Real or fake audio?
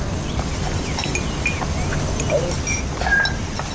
real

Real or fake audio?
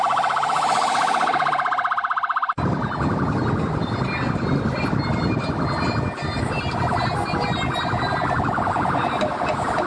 real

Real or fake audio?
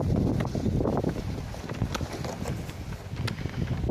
real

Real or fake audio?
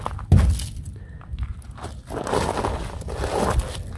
real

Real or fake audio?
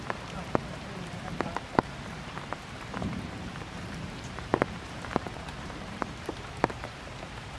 fake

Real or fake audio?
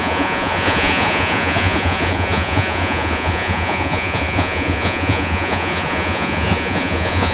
fake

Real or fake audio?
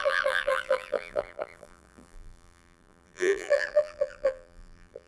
fake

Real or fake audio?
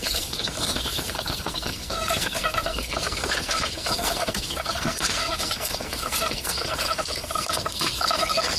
fake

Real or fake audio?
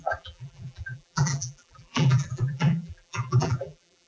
fake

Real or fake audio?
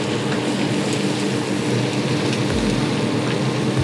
real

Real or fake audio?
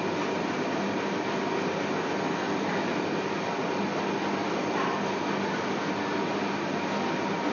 real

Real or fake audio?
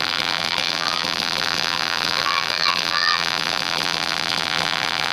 fake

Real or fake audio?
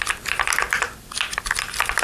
real